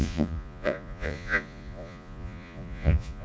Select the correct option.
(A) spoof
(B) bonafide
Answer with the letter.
A